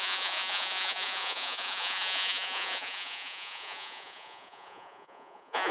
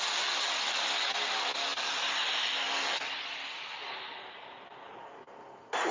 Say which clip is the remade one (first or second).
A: first